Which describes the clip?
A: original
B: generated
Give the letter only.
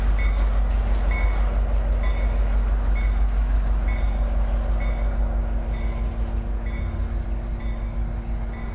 A